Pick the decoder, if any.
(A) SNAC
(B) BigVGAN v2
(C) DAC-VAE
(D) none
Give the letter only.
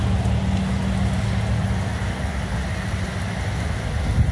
D